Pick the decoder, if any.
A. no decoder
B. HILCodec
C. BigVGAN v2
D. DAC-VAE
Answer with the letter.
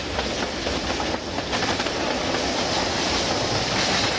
A